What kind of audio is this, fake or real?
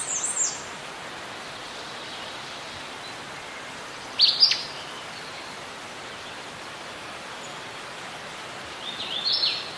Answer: real